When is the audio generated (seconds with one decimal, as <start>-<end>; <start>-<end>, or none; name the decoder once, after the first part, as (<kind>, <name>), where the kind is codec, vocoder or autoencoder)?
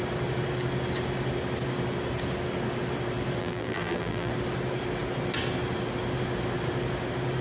3.4-4.3 (vocoder, BigVGAN v2)